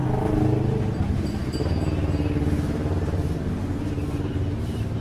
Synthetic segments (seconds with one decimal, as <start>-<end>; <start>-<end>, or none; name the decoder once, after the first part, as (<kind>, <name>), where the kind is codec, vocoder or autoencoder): none